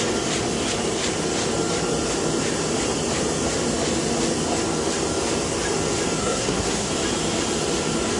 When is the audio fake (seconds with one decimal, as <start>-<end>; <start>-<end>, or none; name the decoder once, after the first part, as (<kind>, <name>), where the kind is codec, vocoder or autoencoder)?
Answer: 6.2-6.9 (codec, SNAC)